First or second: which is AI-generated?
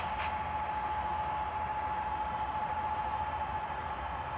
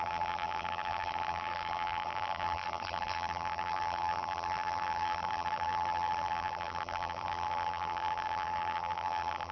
second